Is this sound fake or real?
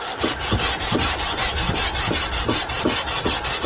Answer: real